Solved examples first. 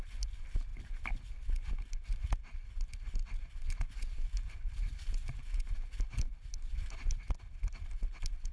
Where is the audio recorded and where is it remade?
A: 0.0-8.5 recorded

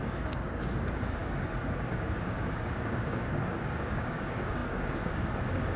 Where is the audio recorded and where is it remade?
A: 0.0-5.8 remade